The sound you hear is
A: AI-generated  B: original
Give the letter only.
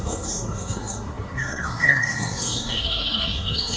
A